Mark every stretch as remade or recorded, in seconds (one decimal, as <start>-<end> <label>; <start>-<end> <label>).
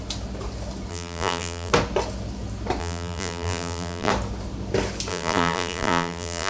0.0-0.9 recorded; 0.9-1.7 remade; 1.7-2.8 recorded; 2.8-4.1 remade; 4.1-5.1 recorded; 5.1-6.5 remade